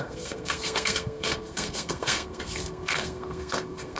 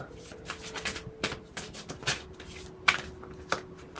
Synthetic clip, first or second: first